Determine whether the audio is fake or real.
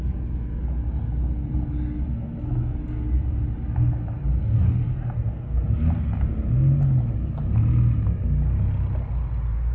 real